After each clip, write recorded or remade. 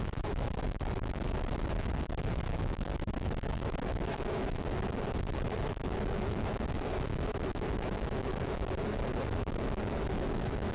remade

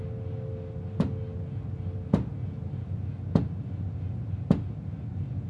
recorded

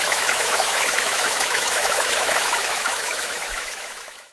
remade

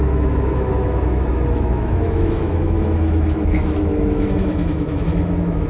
remade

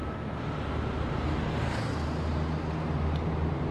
recorded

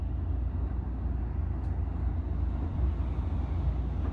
recorded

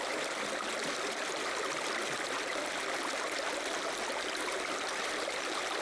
recorded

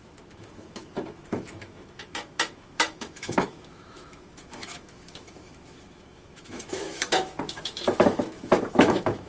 remade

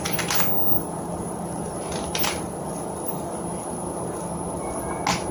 recorded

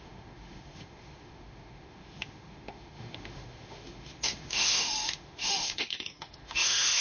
remade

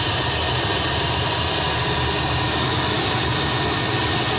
recorded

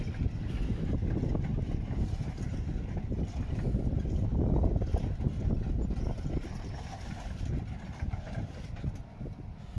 recorded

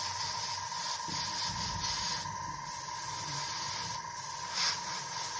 recorded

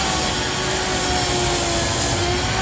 recorded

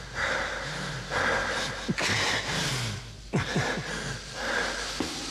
recorded